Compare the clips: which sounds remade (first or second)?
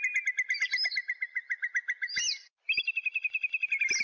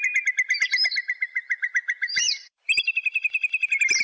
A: second